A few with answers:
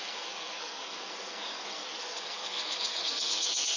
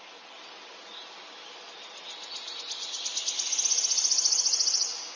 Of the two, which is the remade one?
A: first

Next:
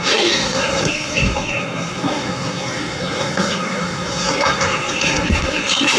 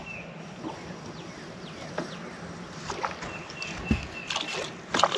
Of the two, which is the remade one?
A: first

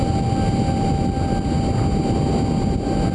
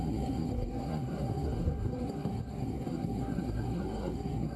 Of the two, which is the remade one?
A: second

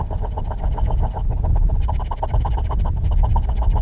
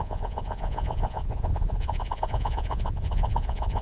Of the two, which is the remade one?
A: second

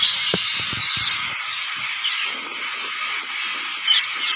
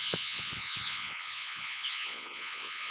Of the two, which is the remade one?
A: second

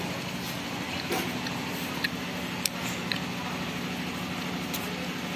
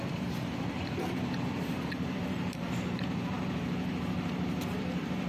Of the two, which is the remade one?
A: second